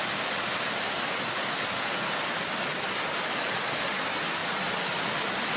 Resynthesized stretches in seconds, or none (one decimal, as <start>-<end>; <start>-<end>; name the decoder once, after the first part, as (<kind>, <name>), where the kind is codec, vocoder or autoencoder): none